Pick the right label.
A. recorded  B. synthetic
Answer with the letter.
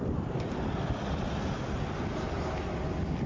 A